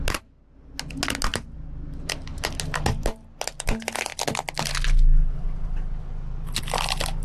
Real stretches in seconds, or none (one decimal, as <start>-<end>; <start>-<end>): 0.0-7.2